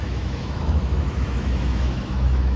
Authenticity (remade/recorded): remade